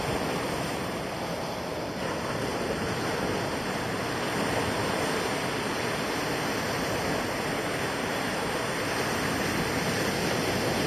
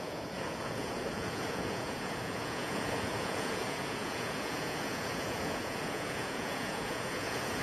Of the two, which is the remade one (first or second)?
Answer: second